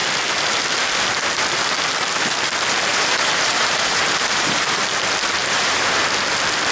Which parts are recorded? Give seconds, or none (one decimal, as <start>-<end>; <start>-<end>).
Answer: 0.0-2.9; 4.8-5.4; 6.0-6.7